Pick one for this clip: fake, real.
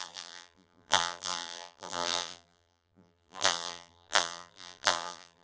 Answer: fake